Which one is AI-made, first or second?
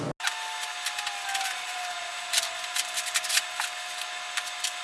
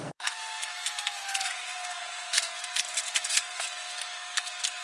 second